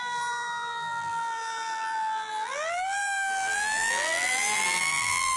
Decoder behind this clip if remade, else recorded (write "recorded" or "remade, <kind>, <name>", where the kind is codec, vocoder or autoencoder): remade, vocoder, BigVGAN v2